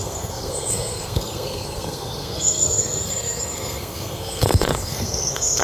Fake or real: fake